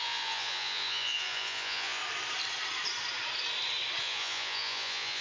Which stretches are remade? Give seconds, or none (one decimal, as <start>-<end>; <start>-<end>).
0.0-2.0; 4.0-5.2